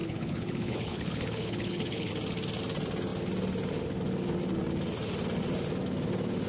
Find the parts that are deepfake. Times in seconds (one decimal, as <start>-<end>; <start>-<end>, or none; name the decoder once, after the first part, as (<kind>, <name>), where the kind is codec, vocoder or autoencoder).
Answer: 0.0-2.1 (codec, HILCodec)